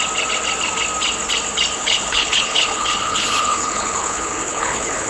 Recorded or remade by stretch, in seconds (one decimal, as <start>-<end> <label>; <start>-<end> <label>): 0.0-1.8 recorded; 1.8-5.1 remade